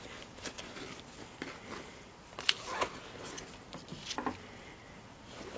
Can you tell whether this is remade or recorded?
recorded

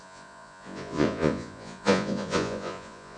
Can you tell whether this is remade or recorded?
remade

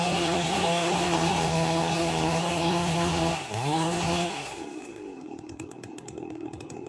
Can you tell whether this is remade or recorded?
remade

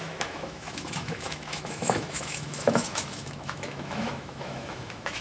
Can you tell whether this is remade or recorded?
remade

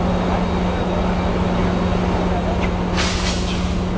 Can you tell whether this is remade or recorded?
recorded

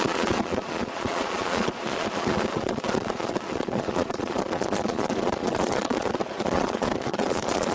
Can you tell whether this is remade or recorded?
remade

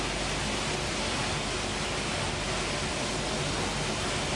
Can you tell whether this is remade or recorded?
recorded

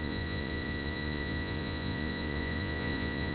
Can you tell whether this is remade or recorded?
remade